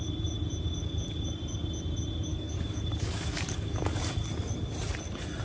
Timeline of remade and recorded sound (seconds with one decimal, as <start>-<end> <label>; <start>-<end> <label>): 0.0-2.3 recorded; 2.3-4.0 remade; 4.0-5.4 recorded